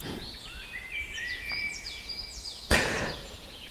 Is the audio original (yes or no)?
no